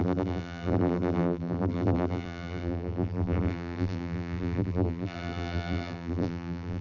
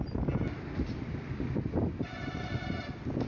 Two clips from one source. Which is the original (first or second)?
second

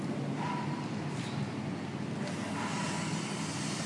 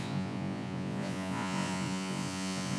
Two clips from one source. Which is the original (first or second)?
first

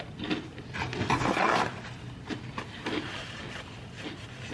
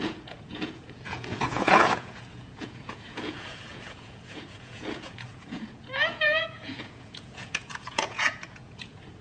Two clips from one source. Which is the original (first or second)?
first